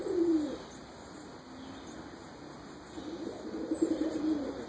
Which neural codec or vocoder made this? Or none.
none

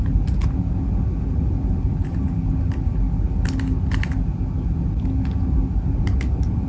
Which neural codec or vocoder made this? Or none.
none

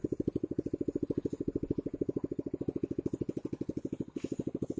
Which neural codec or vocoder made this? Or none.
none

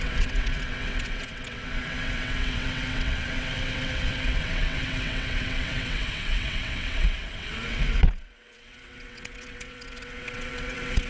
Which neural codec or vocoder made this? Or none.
vocoder, WaveNeXt